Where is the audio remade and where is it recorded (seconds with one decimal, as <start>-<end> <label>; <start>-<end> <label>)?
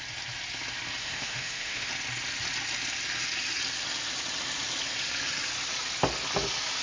0.0-1.0 recorded; 1.0-1.9 remade; 1.9-6.8 recorded